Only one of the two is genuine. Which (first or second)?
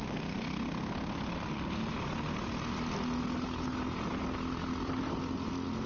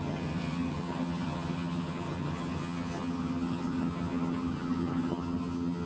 first